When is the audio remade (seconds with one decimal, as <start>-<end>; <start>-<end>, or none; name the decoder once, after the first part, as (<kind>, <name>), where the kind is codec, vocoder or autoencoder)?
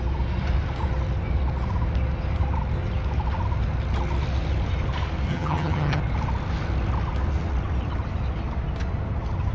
5.3-6.0 (vocoder, HiFi-GAN)